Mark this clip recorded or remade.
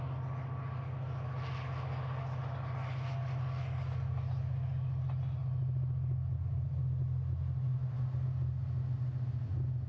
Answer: recorded